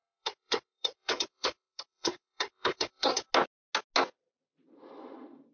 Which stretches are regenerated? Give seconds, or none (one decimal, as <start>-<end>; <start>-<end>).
0.0-3.3